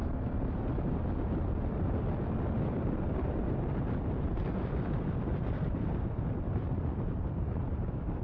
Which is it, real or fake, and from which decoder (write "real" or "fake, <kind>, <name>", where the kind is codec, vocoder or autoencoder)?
fake, vocoder, BigVGAN v2